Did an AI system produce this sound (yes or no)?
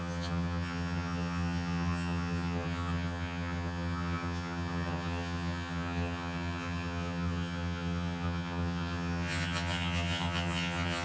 yes